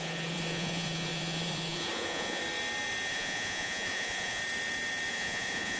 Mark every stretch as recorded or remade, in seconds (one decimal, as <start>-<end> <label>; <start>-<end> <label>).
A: 0.0-2.4 remade; 2.4-3.1 recorded; 3.1-4.4 remade; 4.4-5.1 recorded; 5.1-5.8 remade